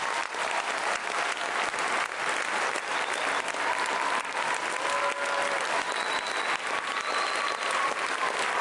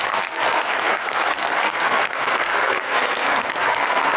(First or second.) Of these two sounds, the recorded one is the first